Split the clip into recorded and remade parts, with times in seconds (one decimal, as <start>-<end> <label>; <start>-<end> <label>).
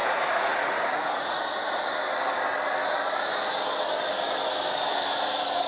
0.0-1.8 remade; 1.8-5.7 recorded